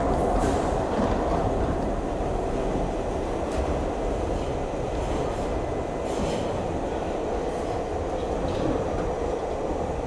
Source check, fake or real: real